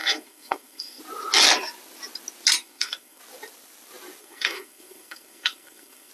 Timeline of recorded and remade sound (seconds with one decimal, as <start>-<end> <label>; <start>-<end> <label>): 0.0-1.0 remade; 1.0-2.6 recorded; 2.6-3.2 remade; 3.2-4.2 recorded; 4.2-6.1 remade